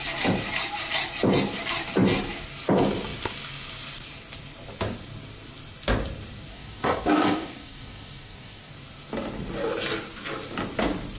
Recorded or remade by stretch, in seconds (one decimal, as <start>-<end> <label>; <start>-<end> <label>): 0.0-6.5 recorded; 6.5-8.7 remade; 8.7-11.2 recorded